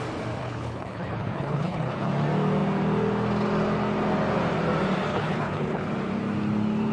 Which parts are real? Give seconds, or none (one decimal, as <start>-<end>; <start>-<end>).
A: 0.0-0.4; 2.1-5.1; 5.9-6.9